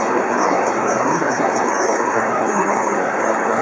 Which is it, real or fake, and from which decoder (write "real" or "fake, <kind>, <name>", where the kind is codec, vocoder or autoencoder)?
fake, codec, SNAC